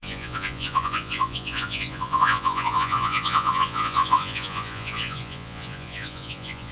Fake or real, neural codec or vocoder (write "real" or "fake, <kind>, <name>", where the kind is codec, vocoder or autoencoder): fake, vocoder, Vocos